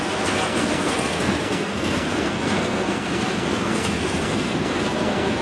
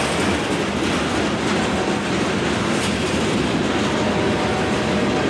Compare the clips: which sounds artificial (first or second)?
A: first